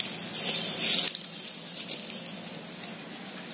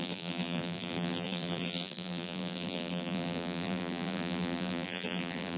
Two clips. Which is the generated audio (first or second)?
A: second